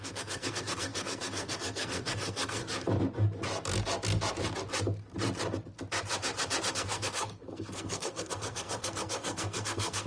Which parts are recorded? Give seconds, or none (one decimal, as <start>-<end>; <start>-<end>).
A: 2.6-6.7